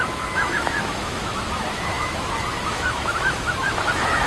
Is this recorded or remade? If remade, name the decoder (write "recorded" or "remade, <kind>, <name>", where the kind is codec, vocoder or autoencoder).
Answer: remade, autoencoder, DAC-VAE